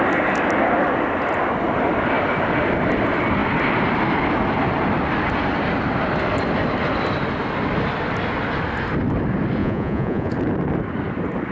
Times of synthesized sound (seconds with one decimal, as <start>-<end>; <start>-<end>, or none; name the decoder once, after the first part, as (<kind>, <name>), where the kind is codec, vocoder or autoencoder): 9.6-10.3 (vocoder, Vocos)